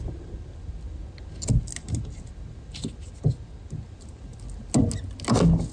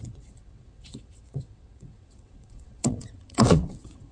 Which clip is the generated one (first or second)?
second